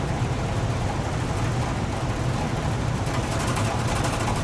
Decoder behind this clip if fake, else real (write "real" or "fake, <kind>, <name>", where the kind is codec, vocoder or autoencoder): real